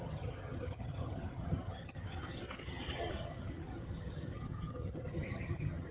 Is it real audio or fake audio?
fake